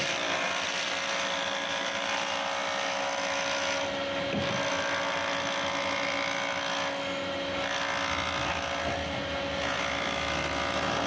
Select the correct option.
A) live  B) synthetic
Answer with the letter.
A